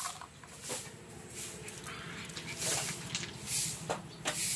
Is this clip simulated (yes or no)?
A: no